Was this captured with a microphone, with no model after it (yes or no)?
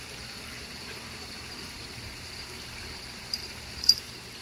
no